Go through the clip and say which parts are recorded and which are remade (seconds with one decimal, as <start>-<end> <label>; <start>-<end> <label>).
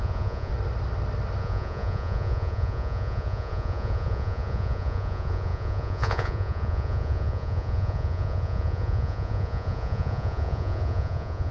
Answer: 0.0-0.5 remade; 0.5-1.4 recorded; 1.4-11.5 remade